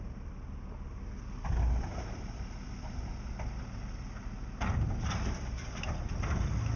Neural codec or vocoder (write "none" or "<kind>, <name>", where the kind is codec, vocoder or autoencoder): none